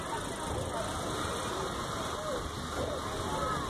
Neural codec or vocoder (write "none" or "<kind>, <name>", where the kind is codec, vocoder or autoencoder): none